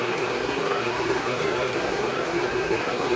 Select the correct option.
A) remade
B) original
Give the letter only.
A